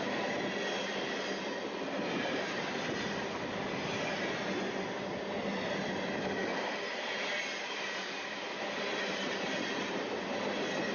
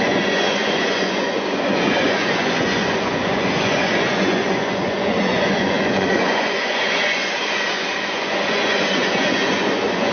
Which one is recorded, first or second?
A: first